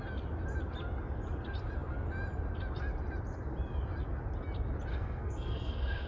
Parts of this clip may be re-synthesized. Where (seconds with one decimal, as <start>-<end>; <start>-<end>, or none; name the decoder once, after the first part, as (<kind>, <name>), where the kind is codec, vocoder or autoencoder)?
4.9-6.1 (codec, SNAC)